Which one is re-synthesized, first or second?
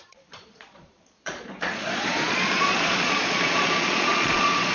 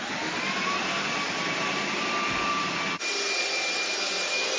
first